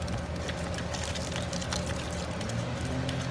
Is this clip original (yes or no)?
yes